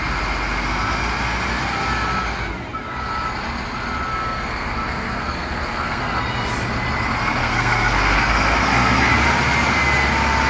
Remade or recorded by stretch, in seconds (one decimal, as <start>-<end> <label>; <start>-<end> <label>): 0.0-4.1 recorded; 4.1-6.2 remade; 6.2-7.4 recorded; 7.4-9.1 remade; 9.1-10.5 recorded